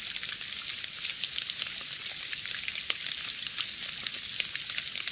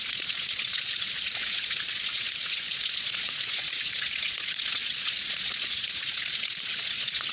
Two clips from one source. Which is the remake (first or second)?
second